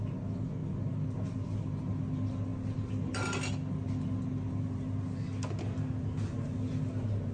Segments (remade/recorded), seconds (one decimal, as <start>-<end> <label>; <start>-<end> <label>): 0.0-7.3 recorded